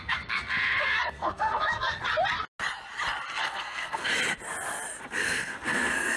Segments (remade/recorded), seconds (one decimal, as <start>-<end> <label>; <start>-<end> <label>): 0.0-2.0 remade; 2.0-3.4 recorded; 3.4-4.1 remade; 4.1-5.0 recorded; 5.0-6.2 remade